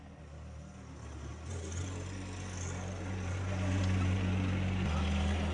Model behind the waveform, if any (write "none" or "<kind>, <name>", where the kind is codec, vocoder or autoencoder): none